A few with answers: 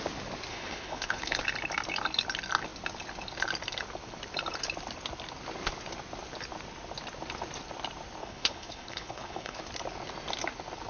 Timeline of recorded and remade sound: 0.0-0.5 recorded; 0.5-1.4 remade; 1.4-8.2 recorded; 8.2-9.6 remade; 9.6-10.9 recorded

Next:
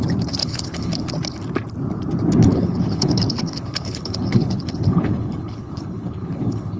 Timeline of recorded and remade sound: 0.0-0.4 recorded; 0.4-1.1 remade; 1.1-2.5 recorded; 2.5-6.8 remade

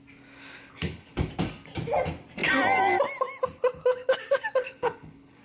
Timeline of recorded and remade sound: 0.0-0.7 recorded; 0.7-1.3 remade; 1.3-4.6 recorded; 4.6-5.4 remade

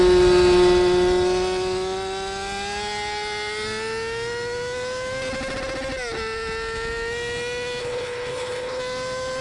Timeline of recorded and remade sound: 0.0-7.8 recorded; 7.8-8.8 remade; 8.8-9.4 recorded